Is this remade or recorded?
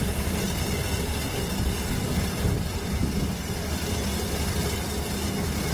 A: recorded